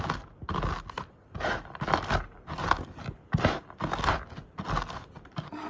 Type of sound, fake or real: real